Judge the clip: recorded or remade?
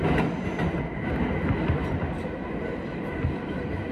recorded